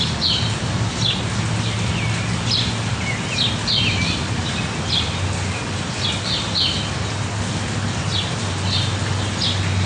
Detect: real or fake real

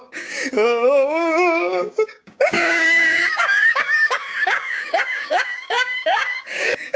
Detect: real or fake fake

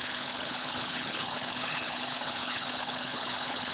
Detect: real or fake fake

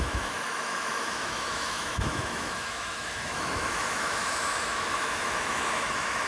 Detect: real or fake fake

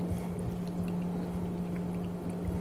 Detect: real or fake real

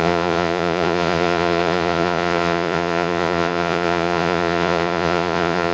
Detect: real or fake fake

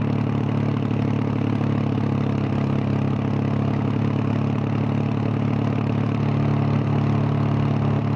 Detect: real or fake real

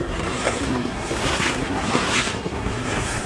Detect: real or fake fake